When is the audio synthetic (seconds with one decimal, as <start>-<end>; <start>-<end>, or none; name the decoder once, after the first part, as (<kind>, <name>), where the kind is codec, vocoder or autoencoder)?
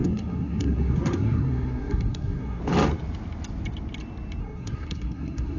0.0-2.6 (codec, SNAC); 4.4-5.6